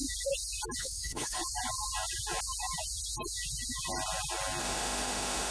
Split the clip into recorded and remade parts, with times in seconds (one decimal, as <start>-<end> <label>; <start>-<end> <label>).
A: 0.0-0.8 recorded; 0.8-1.4 remade; 1.4-4.6 recorded; 4.6-5.5 remade